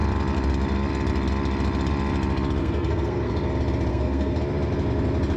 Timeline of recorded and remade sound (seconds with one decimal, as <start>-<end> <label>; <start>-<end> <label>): 0.0-2.6 recorded; 2.6-3.3 remade; 3.3-3.9 recorded; 3.9-4.4 remade; 4.4-5.4 recorded